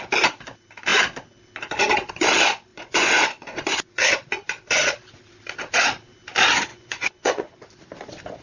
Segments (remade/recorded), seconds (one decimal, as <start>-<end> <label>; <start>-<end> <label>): 0.0-2.7 recorded; 2.7-4.1 remade; 4.1-6.7 recorded; 6.7-7.6 remade; 7.6-8.4 recorded